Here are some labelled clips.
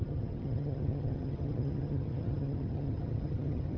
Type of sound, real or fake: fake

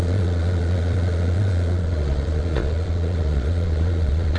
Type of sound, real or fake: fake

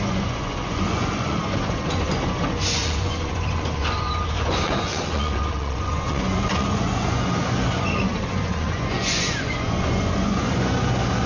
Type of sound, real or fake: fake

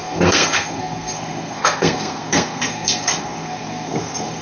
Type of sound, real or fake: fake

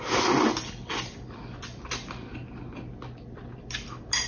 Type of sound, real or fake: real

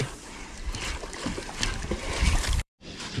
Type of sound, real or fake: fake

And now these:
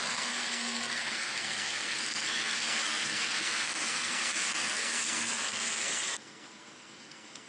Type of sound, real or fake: fake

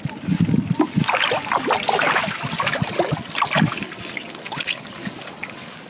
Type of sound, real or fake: real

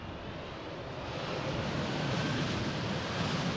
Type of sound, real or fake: real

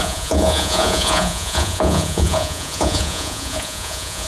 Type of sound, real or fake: fake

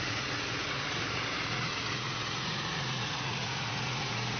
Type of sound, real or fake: fake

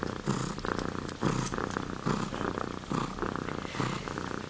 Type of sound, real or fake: real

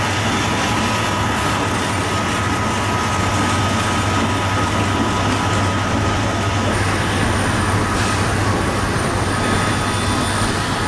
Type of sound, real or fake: real